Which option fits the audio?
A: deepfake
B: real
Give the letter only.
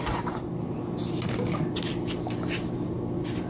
B